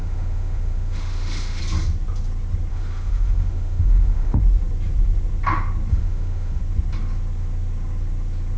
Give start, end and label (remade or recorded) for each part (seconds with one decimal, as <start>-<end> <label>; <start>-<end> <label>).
0.0-1.6 remade; 1.6-2.7 recorded; 2.7-4.4 remade; 4.4-5.9 recorded; 5.9-6.6 remade; 6.6-8.6 recorded